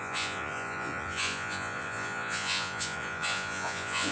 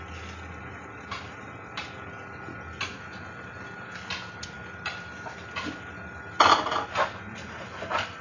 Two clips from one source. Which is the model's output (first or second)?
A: first